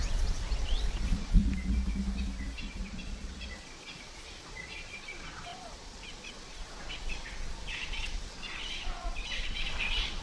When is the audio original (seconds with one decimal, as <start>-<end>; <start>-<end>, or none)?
1.4-2.6